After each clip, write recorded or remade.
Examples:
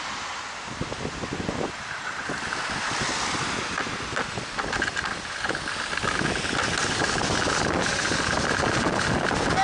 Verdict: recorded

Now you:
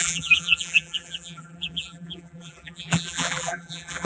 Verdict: remade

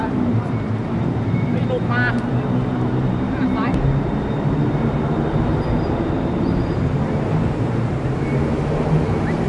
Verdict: remade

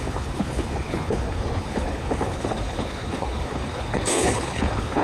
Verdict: remade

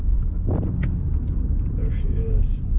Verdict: recorded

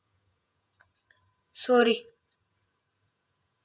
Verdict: remade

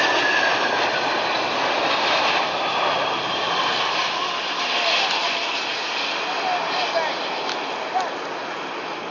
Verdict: recorded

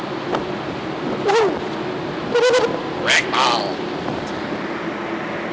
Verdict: recorded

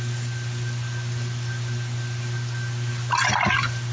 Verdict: recorded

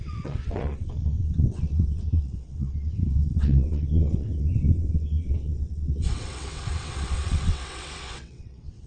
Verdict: remade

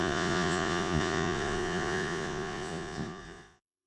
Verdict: remade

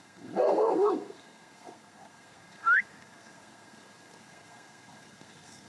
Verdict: remade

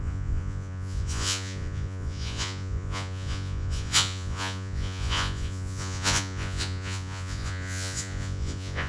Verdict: remade